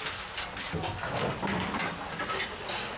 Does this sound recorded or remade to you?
recorded